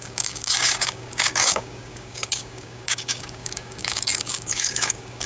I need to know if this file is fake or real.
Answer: fake